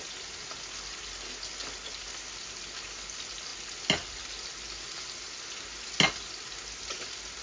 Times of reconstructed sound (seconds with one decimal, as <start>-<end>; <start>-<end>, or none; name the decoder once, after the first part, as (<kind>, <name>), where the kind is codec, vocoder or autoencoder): none